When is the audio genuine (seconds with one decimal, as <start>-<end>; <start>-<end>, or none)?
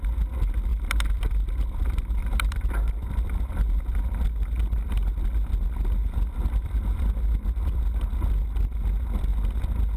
0.0-0.7; 3.8-6.0; 7.8-10.0